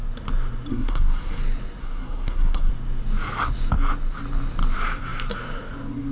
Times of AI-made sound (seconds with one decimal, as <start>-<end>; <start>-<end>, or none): 0.7-1.4; 1.8-2.7